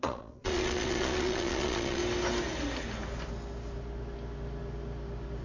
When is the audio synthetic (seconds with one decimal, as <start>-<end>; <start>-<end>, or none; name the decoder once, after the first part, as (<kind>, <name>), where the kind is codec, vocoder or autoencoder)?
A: 0.0-2.0 (vocoder, Vocos)